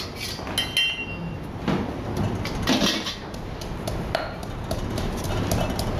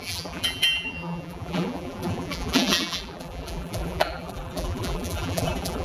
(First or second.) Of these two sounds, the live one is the first